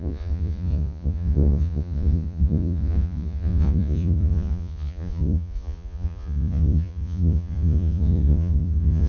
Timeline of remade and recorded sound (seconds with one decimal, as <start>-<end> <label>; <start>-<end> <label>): 0.0-9.1 remade